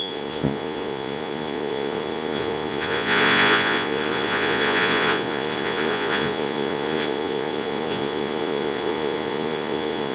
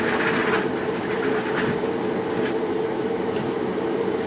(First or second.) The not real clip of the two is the first